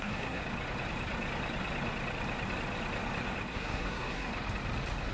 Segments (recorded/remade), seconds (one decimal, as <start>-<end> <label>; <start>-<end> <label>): 0.0-0.4 remade; 0.4-3.5 recorded; 3.5-4.3 remade; 4.3-5.1 recorded